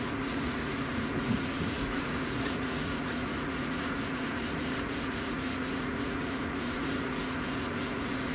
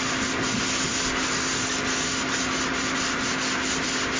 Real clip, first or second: second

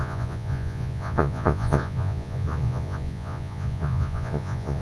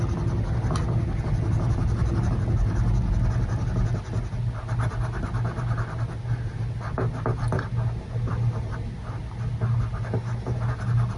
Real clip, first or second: second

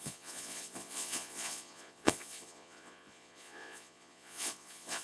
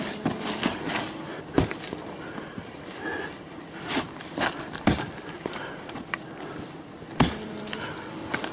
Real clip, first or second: second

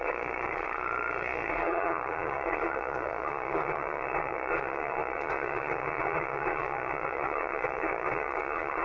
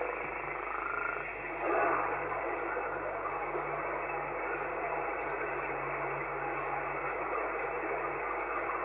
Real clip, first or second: second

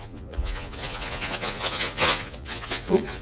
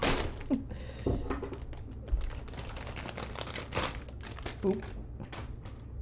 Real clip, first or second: second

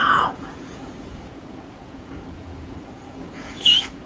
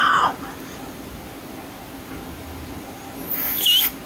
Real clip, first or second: second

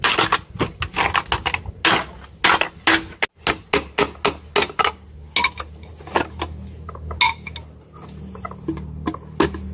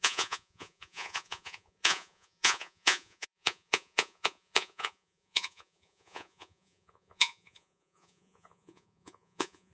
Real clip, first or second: first